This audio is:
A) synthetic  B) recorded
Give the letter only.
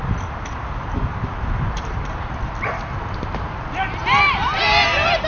A